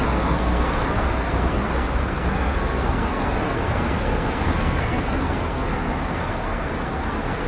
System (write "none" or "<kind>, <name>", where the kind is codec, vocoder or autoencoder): codec, SNAC